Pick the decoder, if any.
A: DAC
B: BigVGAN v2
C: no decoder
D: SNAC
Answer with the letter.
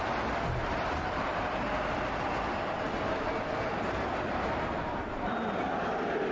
C